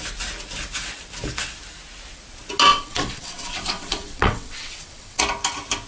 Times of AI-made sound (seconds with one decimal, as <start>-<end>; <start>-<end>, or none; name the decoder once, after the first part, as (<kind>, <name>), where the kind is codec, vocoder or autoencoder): 2.7-5.2 (vocoder, WaveNeXt)